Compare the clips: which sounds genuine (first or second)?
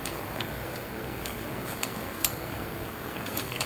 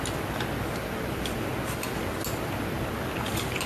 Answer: second